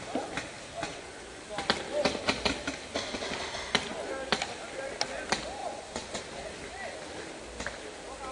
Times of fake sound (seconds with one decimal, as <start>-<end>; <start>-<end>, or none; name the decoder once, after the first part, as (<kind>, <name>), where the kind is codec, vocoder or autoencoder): 0.8-1.4 (vocoder, Vocos); 5.6-6.2